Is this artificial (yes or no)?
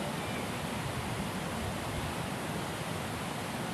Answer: no